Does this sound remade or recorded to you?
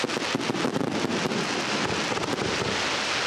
recorded